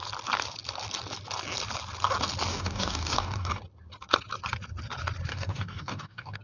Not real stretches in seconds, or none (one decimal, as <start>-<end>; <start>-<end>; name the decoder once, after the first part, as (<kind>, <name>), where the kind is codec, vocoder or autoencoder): 2.5-3.6 (codec, DAC); 5.3-6.4